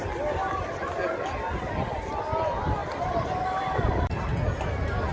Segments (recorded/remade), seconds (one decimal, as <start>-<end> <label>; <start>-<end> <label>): 0.0-2.8 recorded; 2.8-4.4 remade; 4.4-5.1 recorded

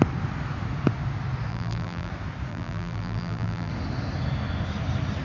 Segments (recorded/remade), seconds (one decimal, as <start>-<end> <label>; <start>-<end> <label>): 0.0-1.5 recorded; 1.5-2.1 remade; 2.1-2.5 recorded; 2.5-3.7 remade; 3.7-5.2 recorded

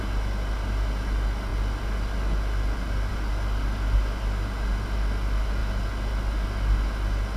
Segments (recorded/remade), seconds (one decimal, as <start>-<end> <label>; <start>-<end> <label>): 0.0-7.4 recorded

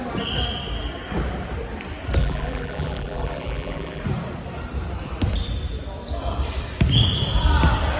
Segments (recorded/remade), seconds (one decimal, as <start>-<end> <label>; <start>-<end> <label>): 0.0-2.2 recorded; 2.2-4.0 remade; 4.0-8.0 recorded

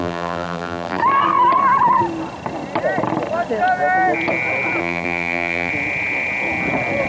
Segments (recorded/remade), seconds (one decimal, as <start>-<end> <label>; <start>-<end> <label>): 0.0-1.0 remade; 1.0-4.8 recorded; 4.8-5.7 remade; 5.7-7.1 recorded

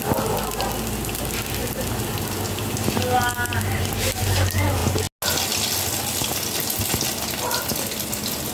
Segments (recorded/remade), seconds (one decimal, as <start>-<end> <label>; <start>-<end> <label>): 0.0-8.5 recorded

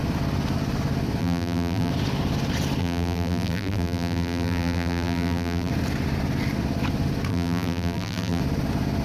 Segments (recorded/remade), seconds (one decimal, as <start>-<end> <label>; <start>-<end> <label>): 0.0-1.2 recorded; 1.2-1.9 remade; 1.9-2.8 recorded; 2.8-5.7 remade; 5.7-7.3 recorded; 7.3-8.4 remade; 8.4-9.0 recorded

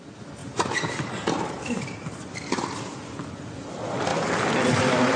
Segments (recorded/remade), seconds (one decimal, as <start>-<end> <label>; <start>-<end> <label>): 0.0-0.4 recorded; 0.4-1.5 remade; 1.5-5.2 recorded